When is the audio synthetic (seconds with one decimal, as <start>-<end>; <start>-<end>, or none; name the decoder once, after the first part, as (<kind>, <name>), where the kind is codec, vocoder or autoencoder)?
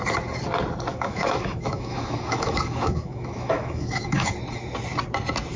0.9-4.3 (autoencoder, DAC-VAE)